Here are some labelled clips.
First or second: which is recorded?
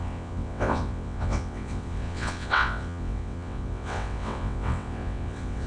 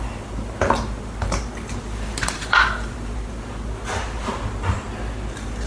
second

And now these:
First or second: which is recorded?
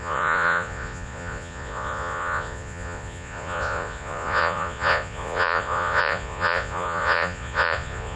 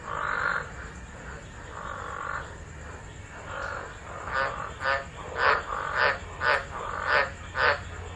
second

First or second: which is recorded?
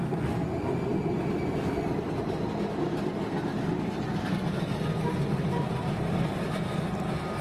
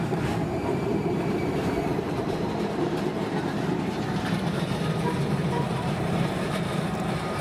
first